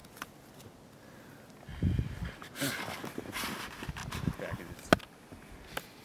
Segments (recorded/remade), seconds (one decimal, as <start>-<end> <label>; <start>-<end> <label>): 0.0-6.0 recorded